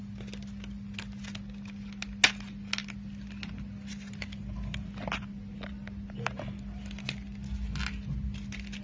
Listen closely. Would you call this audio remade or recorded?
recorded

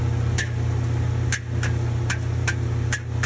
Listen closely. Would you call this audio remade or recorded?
recorded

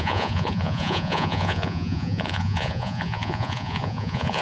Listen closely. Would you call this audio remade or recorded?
remade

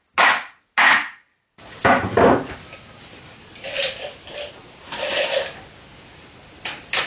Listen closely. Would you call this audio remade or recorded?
recorded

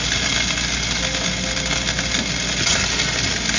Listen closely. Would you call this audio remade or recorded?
recorded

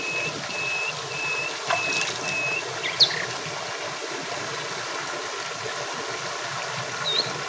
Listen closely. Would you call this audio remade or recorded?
recorded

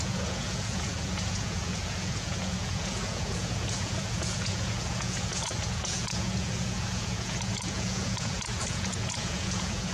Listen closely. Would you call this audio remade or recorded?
remade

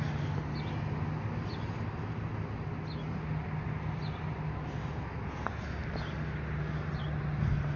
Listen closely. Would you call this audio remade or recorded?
recorded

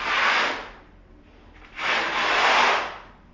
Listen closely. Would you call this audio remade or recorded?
recorded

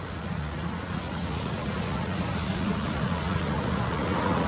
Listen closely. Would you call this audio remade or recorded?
remade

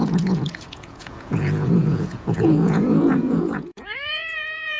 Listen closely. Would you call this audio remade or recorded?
remade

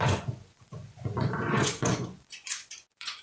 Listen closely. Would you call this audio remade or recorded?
remade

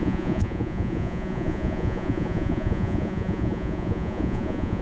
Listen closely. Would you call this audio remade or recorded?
remade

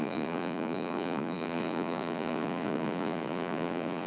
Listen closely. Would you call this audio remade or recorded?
remade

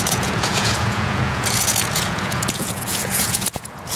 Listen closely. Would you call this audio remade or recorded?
remade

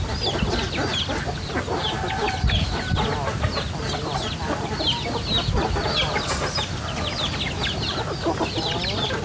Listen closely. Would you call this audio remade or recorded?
recorded